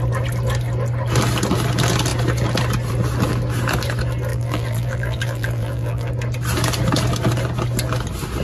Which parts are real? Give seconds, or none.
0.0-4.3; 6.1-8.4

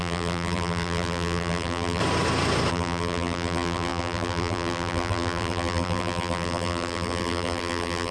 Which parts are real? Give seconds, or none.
2.0-2.7

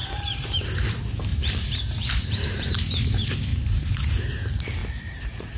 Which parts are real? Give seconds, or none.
0.7-1.3; 2.9-3.5; 4.3-5.6

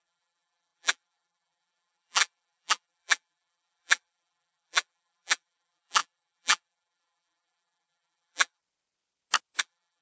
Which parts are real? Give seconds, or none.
8.6-9.6